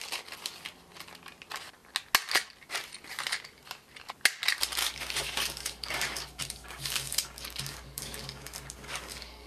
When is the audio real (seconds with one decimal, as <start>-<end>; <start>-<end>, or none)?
0.0-4.8